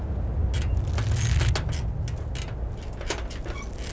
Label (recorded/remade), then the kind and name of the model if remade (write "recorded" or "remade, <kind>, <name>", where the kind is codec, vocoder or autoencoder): recorded